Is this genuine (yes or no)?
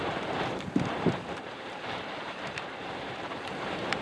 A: no